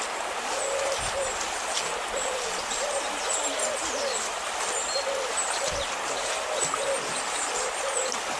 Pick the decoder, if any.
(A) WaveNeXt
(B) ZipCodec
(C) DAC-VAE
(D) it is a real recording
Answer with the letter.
D